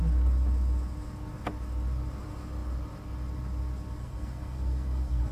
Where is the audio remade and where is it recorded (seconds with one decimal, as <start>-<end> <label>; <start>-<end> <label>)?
0.0-4.0 recorded; 4.0-5.3 remade

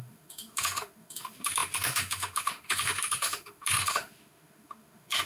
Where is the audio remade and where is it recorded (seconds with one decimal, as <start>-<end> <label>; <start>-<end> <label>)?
0.0-5.3 remade

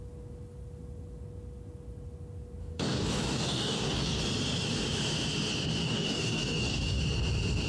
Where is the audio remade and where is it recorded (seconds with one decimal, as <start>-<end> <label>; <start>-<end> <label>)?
0.0-2.6 recorded; 2.6-4.2 remade; 4.2-5.8 recorded; 5.8-7.0 remade; 7.0-7.7 recorded

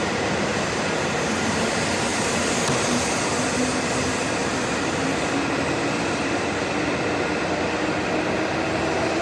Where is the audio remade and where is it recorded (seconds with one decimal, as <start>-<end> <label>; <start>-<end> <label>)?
0.0-2.1 recorded; 2.1-3.2 remade; 3.2-9.2 recorded